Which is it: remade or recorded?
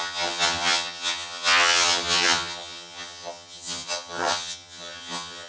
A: remade